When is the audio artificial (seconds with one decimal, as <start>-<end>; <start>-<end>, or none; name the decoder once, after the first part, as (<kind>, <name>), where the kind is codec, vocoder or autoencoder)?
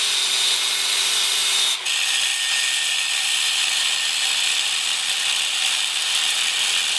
none